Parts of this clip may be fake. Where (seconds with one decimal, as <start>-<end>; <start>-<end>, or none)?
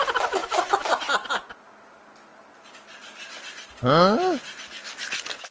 none